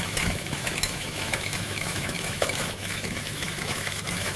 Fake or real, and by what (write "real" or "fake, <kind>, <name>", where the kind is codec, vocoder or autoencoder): fake, autoencoder, DAC-VAE